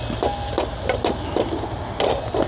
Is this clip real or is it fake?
real